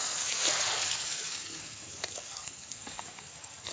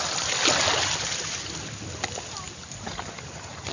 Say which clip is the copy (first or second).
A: first